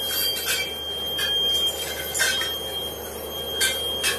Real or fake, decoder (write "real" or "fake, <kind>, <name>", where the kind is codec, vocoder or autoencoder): real